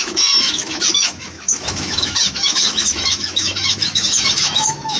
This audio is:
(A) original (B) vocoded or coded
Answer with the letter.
B